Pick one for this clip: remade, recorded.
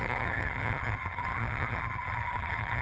remade